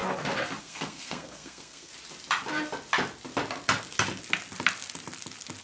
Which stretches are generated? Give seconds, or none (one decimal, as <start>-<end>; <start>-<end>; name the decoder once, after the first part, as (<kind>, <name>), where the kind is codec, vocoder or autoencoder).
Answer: 0.6-1.9 (codec, SNAC)